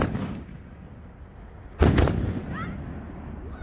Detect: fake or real real